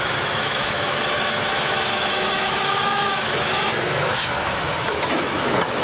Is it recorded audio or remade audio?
remade